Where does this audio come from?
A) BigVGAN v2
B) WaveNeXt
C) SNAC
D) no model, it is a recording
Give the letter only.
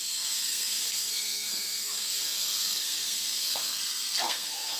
C